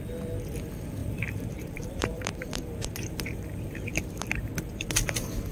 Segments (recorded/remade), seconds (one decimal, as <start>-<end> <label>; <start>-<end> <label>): 0.0-1.0 recorded; 1.0-4.3 remade; 4.3-5.5 recorded